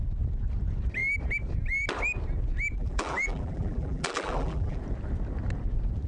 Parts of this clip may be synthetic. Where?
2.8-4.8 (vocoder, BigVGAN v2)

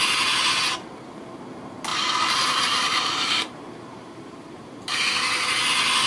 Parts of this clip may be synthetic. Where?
1.9-5.0 (vocoder, BigVGAN v2)

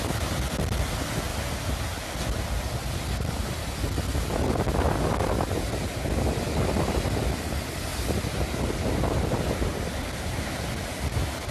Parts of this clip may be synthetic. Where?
0.0-1.3 (vocoder, BigVGAN v2); 2.6-4.1; 6.7-7.9; 8.6-11.5

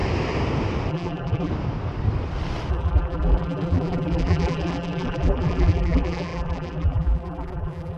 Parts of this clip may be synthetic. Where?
0.9-1.5 (vocoder, BigVGAN v2); 2.7-8.0

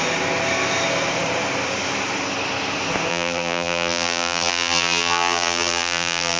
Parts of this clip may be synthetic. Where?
3.1-6.4 (vocoder, BigVGAN v2)

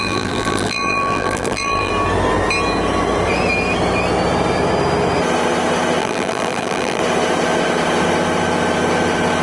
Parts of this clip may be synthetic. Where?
0.0-1.9 (vocoder, BigVGAN v2); 6.0-7.0

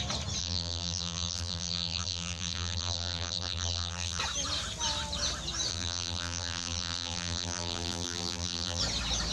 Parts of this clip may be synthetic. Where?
0.4-4.2 (vocoder, BigVGAN v2); 5.7-8.8

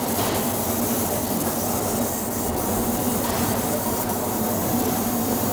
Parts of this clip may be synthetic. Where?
0.0-5.5 (vocoder, BigVGAN v2)